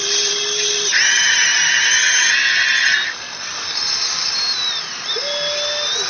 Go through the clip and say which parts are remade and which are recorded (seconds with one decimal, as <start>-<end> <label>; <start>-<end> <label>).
0.0-6.1 recorded